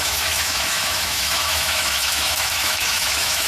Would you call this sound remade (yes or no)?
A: yes